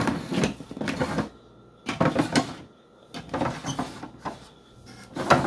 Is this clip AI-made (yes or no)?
no